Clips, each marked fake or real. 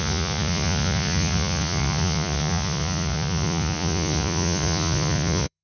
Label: fake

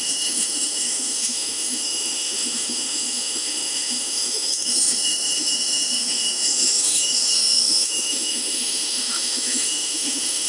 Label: fake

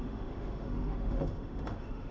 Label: fake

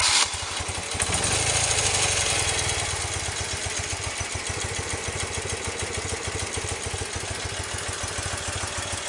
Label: real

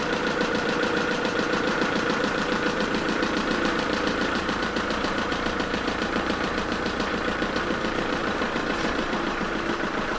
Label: fake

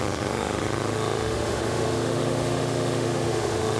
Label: fake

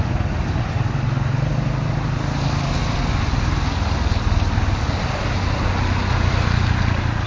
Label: real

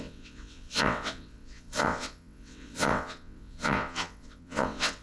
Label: fake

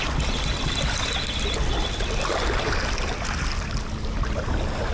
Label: real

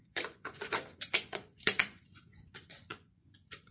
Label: fake